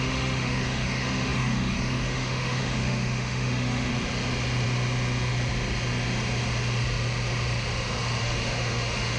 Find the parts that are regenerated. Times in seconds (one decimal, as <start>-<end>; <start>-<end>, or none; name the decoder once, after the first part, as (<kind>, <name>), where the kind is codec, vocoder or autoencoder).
0.0-3.9 (autoencoder, DAC-VAE); 8.2-9.2